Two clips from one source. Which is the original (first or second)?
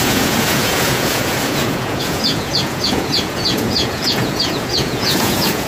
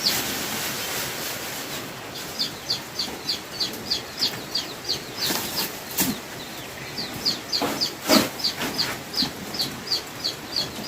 second